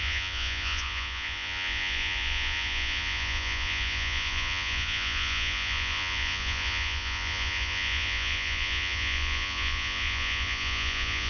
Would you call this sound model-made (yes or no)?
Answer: yes